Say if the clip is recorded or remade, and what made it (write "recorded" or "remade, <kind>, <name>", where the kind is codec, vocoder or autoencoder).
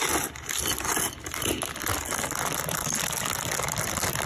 recorded